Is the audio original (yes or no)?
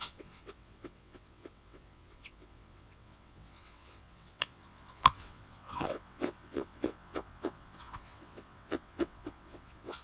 no